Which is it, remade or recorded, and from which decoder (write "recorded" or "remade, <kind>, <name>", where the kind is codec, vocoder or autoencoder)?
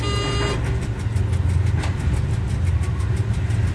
recorded